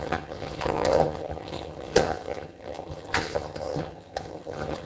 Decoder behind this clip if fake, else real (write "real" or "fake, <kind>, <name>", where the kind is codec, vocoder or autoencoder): fake, vocoder, HiFi-GAN